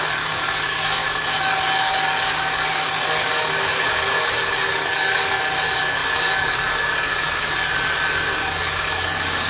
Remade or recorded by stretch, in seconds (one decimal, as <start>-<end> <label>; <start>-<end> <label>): 0.0-9.5 remade